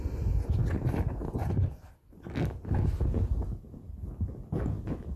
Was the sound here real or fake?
real